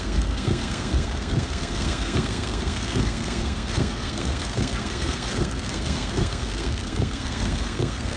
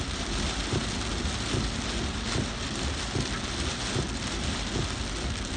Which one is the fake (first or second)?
first